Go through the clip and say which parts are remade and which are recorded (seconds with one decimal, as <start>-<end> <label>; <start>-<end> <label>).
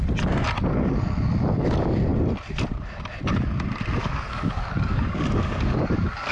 0.0-4.0 recorded; 4.0-6.3 remade